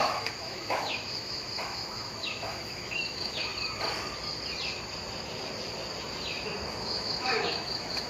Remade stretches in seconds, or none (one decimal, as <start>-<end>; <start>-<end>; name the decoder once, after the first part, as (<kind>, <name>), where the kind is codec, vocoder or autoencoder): 0.0-3.5 (autoencoder, DAC-VAE); 6.8-8.1